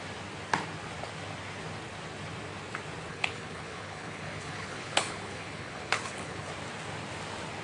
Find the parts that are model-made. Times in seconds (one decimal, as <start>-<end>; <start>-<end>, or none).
3.1-6.5